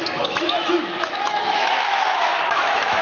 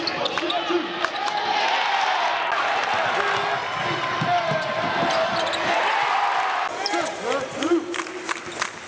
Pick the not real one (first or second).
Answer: first